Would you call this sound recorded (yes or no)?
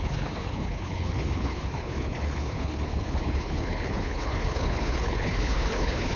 no